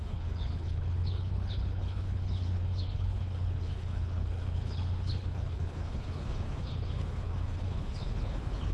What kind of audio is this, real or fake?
fake